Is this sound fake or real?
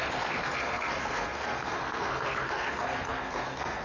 fake